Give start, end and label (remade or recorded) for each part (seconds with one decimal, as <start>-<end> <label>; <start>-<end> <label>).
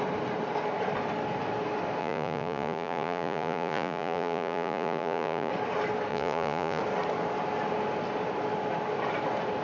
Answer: 0.0-2.0 recorded; 2.0-5.5 remade; 5.5-6.1 recorded; 6.1-6.8 remade; 6.8-9.6 recorded